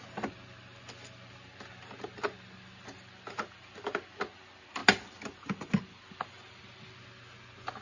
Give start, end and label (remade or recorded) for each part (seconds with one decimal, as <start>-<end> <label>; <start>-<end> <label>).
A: 0.0-7.8 recorded